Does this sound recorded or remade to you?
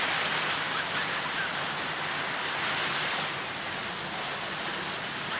recorded